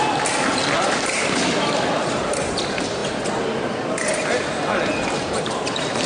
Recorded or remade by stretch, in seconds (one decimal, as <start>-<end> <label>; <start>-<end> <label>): 0.0-3.0 remade; 3.0-5.3 recorded; 5.3-6.1 remade